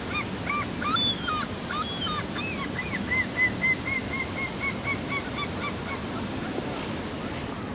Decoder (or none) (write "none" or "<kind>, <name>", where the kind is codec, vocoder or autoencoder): none